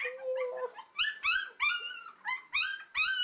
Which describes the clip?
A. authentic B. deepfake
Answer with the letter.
A